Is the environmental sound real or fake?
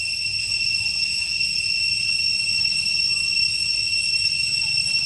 real